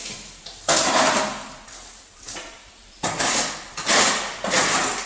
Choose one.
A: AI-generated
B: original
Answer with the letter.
B